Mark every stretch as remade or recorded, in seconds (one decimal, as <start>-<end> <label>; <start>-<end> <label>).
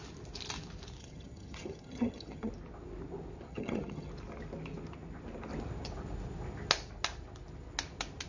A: 0.0-1.0 recorded; 1.0-2.5 remade; 2.5-3.5 recorded; 3.5-4.1 remade; 4.1-8.3 recorded